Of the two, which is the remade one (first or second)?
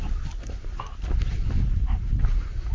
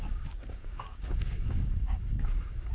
second